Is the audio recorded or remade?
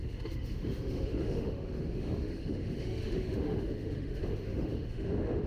remade